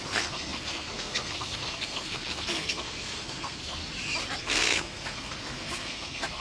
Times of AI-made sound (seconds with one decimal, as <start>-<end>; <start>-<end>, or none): 0.0-3.8; 4.4-6.4